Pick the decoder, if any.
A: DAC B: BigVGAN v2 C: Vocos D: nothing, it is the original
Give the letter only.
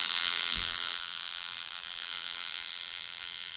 B